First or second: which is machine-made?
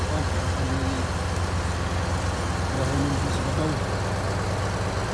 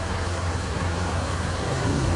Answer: second